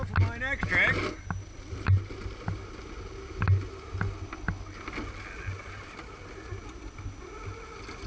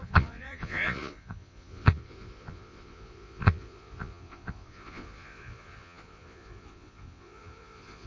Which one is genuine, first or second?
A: first